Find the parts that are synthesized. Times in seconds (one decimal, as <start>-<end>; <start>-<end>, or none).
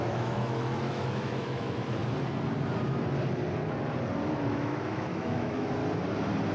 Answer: 0.0-2.0; 4.5-5.8